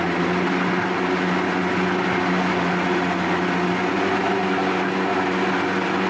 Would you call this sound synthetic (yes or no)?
no